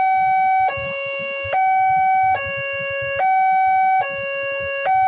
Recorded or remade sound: recorded